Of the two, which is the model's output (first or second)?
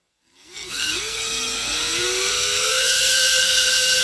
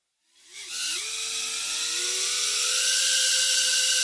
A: first